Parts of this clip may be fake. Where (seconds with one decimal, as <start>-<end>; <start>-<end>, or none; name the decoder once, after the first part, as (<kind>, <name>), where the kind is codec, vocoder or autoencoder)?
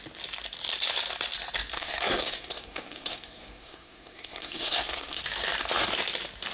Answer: 1.7-5.2 (codec, SNAC)